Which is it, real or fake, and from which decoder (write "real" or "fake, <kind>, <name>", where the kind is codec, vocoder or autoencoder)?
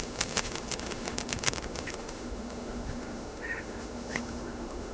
fake, autoencoder, DAC-VAE